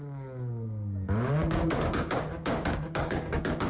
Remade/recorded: remade